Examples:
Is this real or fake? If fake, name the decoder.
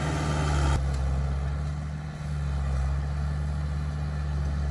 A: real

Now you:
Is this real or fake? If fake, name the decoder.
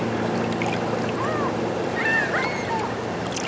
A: real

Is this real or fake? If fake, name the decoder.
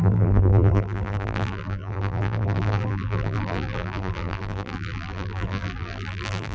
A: fake, vocoder, BigVGAN v2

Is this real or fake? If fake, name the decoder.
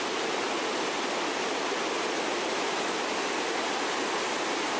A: real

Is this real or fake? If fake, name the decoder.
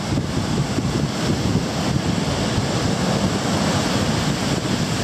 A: real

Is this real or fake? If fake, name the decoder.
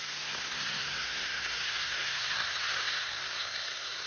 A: fake, codec, SNAC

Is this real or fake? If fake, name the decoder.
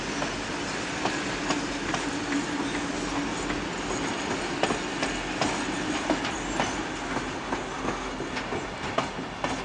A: real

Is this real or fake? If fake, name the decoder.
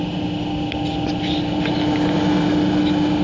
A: real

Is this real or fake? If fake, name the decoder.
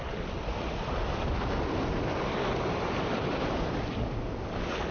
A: real